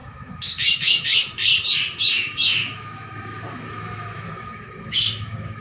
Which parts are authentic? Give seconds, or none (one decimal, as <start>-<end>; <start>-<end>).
1.3-2.1